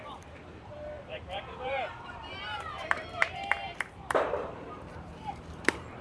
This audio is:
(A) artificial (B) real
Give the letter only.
A